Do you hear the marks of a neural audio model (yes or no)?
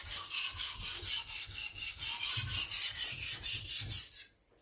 no